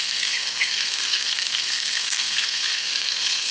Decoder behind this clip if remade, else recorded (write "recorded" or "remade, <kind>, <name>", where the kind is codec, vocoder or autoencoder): remade, codec, SNAC